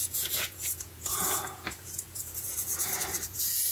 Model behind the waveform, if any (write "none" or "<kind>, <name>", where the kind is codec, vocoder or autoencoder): vocoder, Vocos